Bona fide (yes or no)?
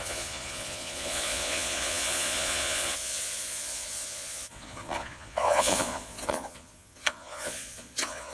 no